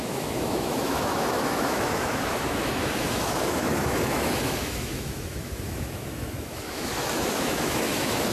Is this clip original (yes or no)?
no